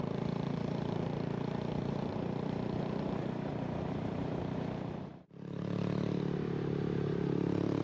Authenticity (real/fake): fake